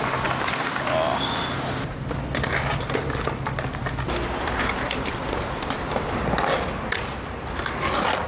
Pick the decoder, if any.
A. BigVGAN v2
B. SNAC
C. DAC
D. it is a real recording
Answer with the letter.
D